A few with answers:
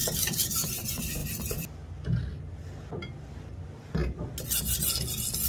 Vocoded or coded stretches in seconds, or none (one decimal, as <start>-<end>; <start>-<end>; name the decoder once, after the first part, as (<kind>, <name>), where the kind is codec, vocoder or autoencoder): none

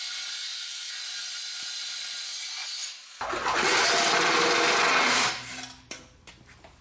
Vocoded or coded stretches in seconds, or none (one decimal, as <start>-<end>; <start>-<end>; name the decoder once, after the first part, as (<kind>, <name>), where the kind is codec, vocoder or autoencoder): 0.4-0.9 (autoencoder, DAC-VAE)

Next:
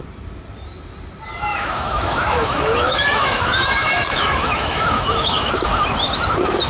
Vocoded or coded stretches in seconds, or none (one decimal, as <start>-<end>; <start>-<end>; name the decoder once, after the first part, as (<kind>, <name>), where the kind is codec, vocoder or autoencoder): 1.5-5.5 (autoencoder, DAC-VAE)

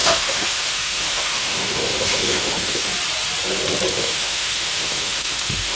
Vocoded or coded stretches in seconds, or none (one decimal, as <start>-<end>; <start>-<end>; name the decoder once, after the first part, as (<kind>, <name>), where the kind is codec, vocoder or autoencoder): 0.0-2.9 (autoencoder, DAC-VAE); 3.9-5.8

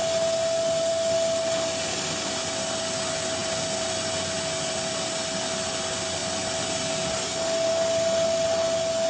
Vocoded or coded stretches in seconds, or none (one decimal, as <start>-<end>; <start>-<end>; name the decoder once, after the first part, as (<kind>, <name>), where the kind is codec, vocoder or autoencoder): none

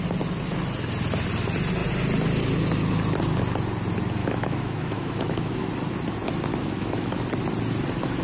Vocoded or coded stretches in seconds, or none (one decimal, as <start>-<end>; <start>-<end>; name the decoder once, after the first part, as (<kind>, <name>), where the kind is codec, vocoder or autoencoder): 4.2-5.7 (autoencoder, DAC-VAE); 6.5-7.2

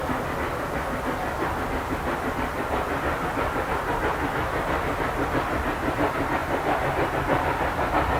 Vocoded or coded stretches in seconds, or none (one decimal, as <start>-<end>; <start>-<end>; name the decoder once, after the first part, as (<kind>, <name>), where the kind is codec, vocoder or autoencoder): none